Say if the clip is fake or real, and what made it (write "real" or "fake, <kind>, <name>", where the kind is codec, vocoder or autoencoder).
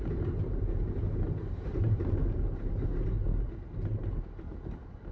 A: fake, vocoder, BigVGAN v2